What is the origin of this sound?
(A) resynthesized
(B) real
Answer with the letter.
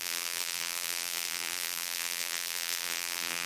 A